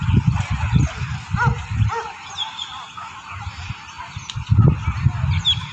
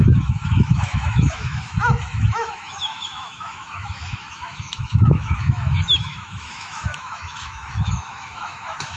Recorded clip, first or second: first